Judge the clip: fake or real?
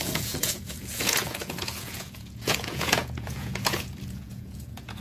fake